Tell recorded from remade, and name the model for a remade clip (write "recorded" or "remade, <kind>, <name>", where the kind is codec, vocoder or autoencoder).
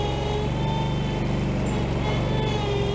recorded